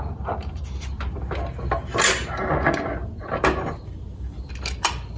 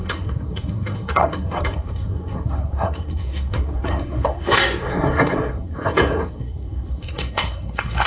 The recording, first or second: first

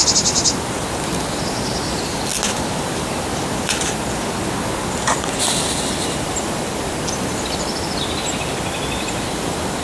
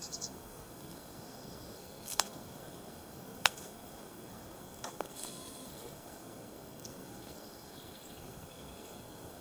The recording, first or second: first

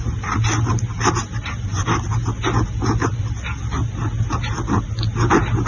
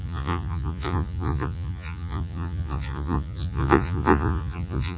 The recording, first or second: first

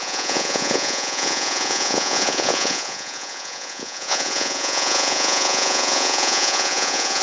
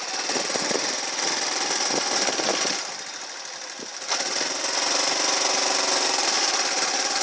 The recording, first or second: second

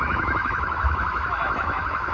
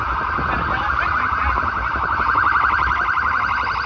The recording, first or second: second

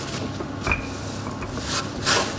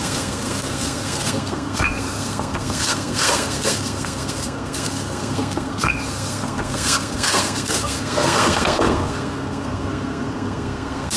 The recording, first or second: first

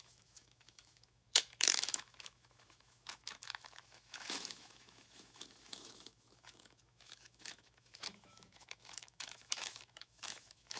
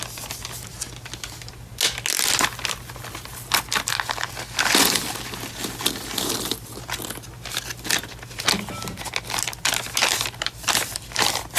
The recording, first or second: second